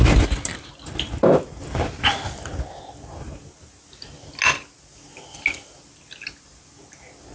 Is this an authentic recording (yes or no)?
yes